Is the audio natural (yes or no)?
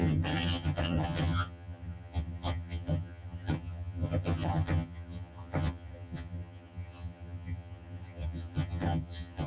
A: no